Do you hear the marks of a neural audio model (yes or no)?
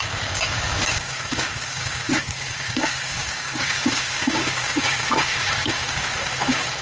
yes